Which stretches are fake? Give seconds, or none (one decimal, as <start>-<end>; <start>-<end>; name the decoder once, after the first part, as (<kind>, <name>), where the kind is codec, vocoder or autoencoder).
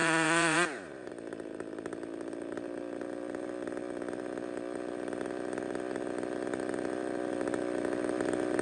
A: 0.0-1.1 (vocoder, BigVGAN v2)